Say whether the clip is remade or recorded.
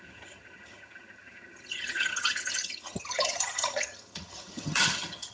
remade